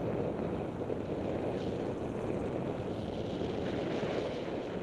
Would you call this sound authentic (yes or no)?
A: yes